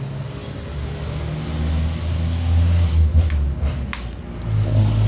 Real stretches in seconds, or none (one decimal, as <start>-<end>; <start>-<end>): 0.0-5.1